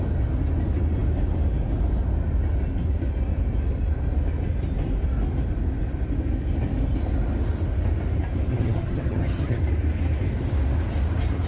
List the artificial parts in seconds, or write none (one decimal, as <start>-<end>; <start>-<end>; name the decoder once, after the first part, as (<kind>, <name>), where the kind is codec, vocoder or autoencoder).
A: 8.5-9.6 (vocoder, HiFi-GAN)